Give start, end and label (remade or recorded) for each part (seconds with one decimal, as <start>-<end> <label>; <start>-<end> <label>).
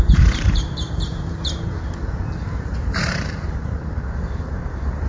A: 0.0-1.1 remade; 1.1-2.8 recorded; 2.8-5.1 remade